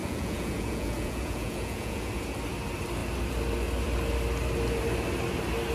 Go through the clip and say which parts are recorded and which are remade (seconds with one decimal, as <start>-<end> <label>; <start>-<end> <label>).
0.0-2.1 remade; 2.1-5.7 recorded